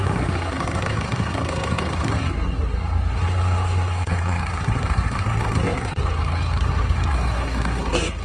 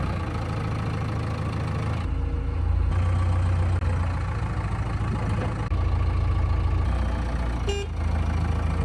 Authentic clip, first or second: second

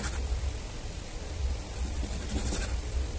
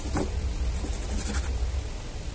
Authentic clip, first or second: second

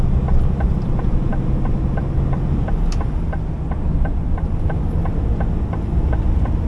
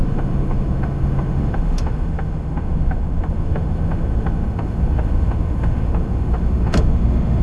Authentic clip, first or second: first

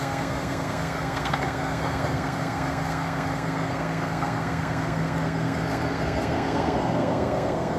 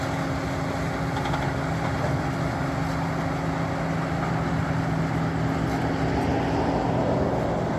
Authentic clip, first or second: second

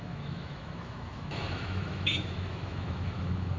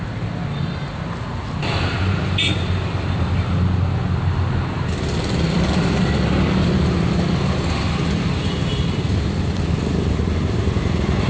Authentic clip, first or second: second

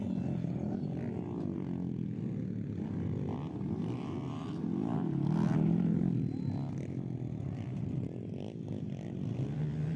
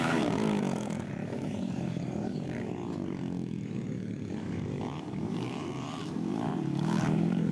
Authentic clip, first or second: first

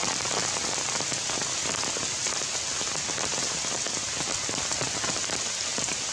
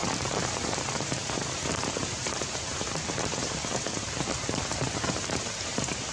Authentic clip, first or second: first